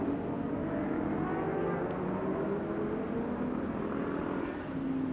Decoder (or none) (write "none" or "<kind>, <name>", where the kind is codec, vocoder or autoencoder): none